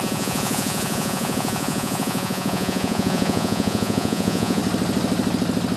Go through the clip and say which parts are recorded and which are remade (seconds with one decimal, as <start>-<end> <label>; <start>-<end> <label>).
0.0-4.6 remade; 4.6-5.8 recorded